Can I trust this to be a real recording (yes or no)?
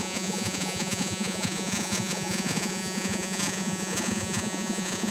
no